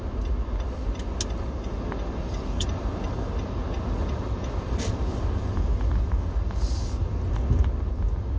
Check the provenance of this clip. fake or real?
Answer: real